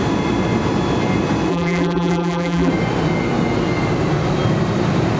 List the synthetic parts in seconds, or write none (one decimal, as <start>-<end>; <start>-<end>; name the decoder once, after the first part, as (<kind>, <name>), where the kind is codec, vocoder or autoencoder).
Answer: 1.5-2.7 (vocoder, BigVGAN v2)